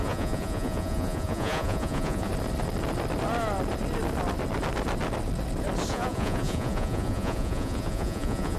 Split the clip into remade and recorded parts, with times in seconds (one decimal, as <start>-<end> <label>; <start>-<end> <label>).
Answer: 0.0-2.3 remade; 2.3-5.9 recorded; 5.9-8.6 remade